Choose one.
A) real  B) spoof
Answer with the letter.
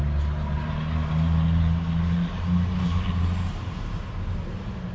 A